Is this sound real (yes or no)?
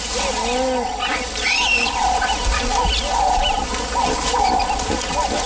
yes